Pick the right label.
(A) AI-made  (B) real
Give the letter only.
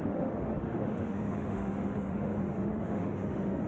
A